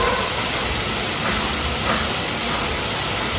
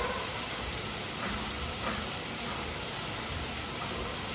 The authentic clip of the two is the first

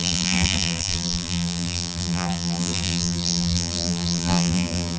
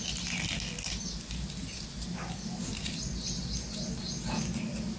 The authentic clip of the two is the second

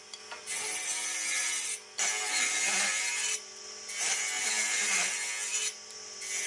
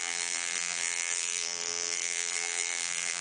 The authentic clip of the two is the first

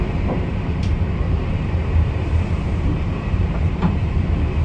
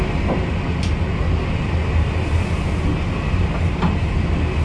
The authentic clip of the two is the second